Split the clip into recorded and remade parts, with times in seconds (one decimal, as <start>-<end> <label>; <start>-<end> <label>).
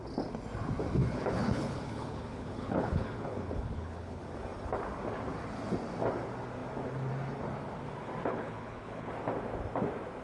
0.0-1.0 recorded; 1.0-4.2 remade; 4.2-8.3 recorded; 8.3-9.1 remade; 9.1-10.2 recorded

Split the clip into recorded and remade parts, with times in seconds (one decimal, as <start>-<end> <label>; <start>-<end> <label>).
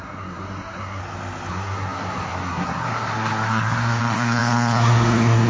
0.0-1.0 remade; 1.0-1.5 recorded; 1.5-5.5 remade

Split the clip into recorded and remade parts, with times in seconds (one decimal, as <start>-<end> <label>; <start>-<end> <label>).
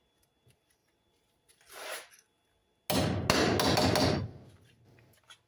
0.0-0.8 recorded; 0.8-2.1 remade; 2.1-5.5 recorded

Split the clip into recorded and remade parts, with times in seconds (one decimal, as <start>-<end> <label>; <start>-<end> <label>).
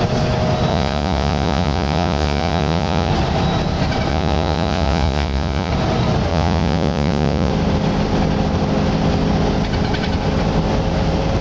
0.0-0.7 recorded; 0.7-3.1 remade; 3.1-4.1 recorded; 4.1-5.7 remade; 5.7-6.3 recorded; 6.3-7.5 remade; 7.5-11.4 recorded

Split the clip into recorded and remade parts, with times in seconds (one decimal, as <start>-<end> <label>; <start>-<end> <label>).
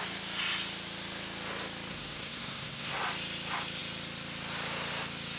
0.0-1.9 recorded; 1.9-3.0 remade; 3.0-5.4 recorded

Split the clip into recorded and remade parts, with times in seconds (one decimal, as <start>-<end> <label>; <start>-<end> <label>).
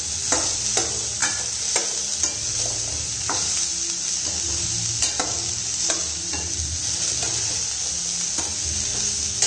0.0-9.5 recorded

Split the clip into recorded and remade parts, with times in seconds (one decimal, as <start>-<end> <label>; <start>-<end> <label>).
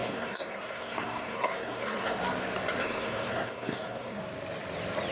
0.0-2.2 remade; 2.2-2.8 recorded; 2.8-4.2 remade; 4.2-5.1 recorded